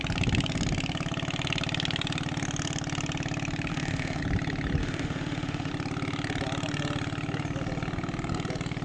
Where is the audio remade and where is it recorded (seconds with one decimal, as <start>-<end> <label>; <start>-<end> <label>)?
0.0-3.7 recorded; 3.7-4.2 remade; 4.2-4.8 recorded; 4.8-5.7 remade; 5.7-8.8 recorded